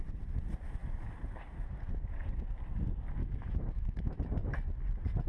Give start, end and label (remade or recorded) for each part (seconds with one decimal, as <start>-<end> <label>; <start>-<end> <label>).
0.0-3.2 recorded; 3.2-4.2 remade; 4.2-5.3 recorded